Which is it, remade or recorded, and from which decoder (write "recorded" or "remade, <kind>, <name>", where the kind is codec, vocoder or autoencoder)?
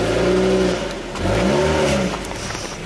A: recorded